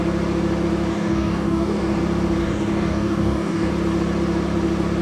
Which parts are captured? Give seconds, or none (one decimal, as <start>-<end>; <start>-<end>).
0.0-0.9; 2.0-2.4; 3.7-5.0